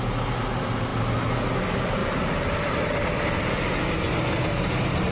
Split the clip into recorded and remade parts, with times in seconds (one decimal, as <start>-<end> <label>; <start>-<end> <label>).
0.0-2.0 recorded; 2.0-5.1 remade